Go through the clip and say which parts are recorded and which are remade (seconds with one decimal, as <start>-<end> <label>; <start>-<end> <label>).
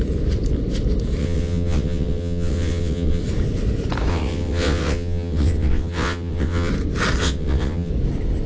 0.0-1.2 recorded; 1.2-3.2 remade; 3.2-4.1 recorded; 4.1-6.7 remade; 6.7-7.2 recorded; 7.2-7.9 remade; 7.9-8.5 recorded